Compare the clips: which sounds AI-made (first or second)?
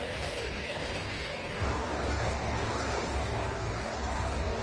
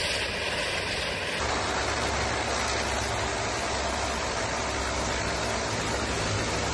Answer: first